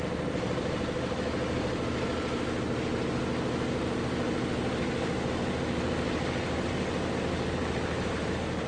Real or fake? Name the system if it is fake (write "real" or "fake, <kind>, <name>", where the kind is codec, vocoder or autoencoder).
real